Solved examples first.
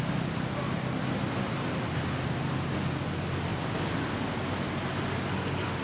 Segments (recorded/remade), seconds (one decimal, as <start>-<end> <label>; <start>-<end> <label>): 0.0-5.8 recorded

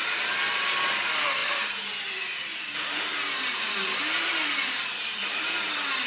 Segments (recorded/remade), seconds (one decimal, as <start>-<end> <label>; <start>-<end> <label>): 0.0-6.1 remade

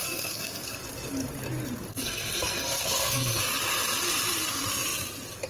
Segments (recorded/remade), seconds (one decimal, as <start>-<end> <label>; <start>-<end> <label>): 0.0-0.8 remade; 0.8-1.9 recorded; 1.9-3.4 remade; 3.4-5.5 recorded

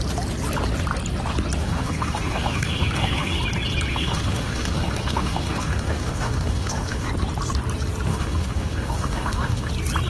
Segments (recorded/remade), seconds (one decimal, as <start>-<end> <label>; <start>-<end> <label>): 0.0-1.6 recorded; 1.6-3.4 remade; 3.4-3.9 recorded; 3.9-7.1 remade; 7.1-8.1 recorded; 8.1-9.7 remade; 9.7-10.1 recorded

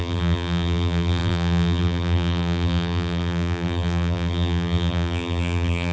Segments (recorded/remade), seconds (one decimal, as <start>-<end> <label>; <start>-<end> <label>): 0.0-5.9 remade

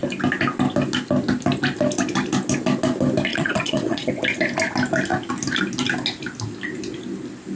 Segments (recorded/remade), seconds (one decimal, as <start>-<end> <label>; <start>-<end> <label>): 0.0-3.3 recorded; 3.3-4.1 remade; 4.1-7.6 recorded